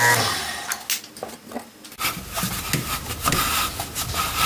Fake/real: real